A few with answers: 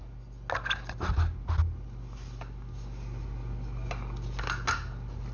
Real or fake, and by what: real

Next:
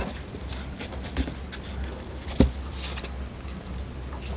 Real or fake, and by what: real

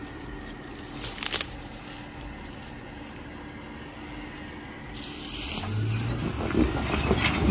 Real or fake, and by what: real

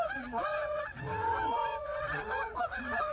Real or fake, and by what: fake, vocoder, WaveNeXt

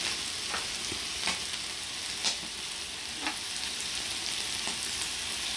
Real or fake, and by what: real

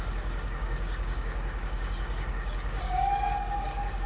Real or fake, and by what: fake, codec, DAC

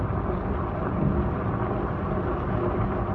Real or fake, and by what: real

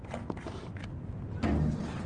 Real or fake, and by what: real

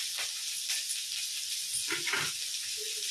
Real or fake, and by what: real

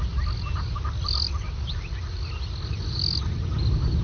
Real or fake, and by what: real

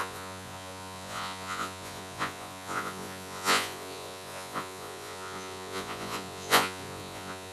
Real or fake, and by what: fake, vocoder, Vocos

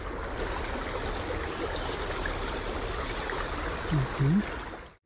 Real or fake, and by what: real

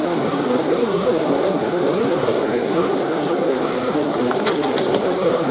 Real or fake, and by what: fake, codec, SNAC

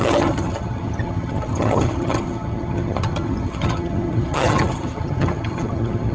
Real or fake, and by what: fake, vocoder, HiFi-GAN